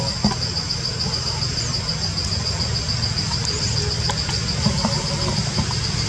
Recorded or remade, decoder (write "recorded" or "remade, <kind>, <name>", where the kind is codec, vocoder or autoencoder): recorded